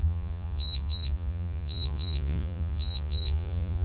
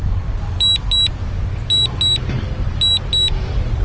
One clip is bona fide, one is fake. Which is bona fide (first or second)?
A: second